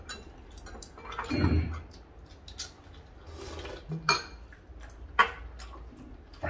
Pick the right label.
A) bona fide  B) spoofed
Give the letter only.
A